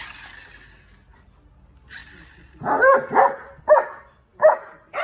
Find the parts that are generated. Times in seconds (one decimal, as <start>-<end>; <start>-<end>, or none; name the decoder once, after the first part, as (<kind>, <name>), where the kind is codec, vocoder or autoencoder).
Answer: none